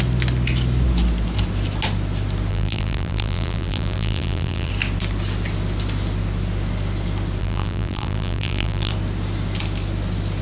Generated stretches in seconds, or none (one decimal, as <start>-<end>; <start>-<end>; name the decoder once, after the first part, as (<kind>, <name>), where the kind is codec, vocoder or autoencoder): 2.5-4.7 (vocoder, BigVGAN v2); 7.4-8.9